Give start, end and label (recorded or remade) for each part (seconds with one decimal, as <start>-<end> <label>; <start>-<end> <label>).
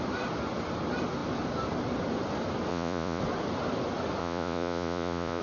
0.0-2.7 recorded; 2.7-3.2 remade; 3.2-4.2 recorded; 4.2-5.4 remade